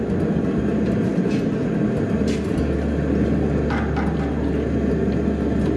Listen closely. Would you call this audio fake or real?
real